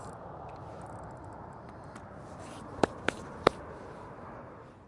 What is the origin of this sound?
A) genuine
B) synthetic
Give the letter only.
B